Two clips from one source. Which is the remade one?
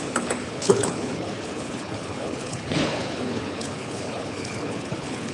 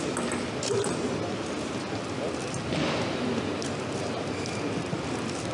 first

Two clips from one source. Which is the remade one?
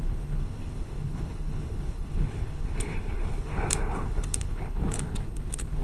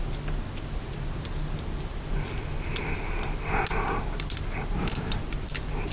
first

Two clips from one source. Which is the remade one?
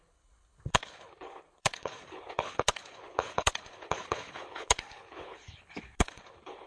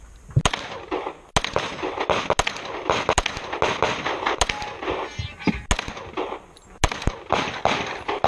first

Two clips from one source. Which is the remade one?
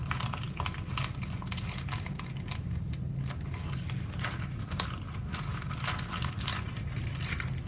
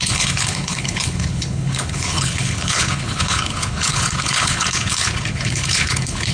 second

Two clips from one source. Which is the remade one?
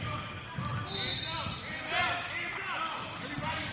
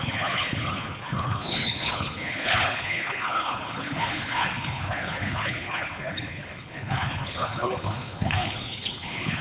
second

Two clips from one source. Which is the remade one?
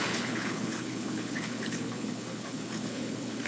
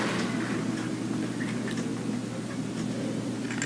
first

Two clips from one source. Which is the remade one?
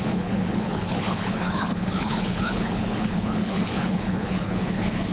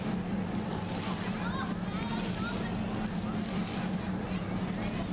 first